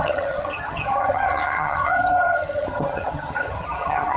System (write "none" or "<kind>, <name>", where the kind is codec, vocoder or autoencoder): vocoder, HiFi-GAN